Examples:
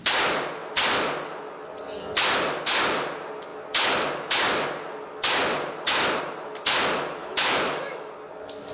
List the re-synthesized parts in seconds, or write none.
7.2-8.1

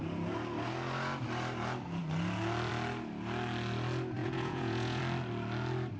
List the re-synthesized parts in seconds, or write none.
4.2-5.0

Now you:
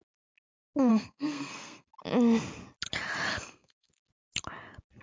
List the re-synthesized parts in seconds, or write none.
0.9-1.9; 3.3-3.9

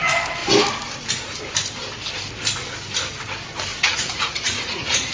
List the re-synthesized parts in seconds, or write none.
3.7-5.1

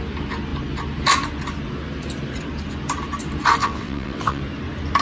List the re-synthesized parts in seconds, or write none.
3.6-4.4

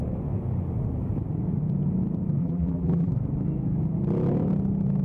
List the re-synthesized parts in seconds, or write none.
2.4-3.1